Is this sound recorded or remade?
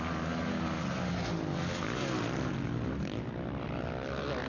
recorded